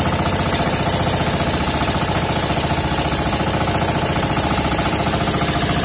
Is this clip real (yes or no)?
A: yes